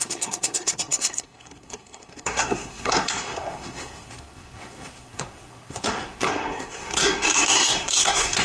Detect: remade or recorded remade